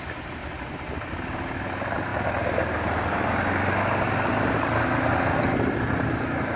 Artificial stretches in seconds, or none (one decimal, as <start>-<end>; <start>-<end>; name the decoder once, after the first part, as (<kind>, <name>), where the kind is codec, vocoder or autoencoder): none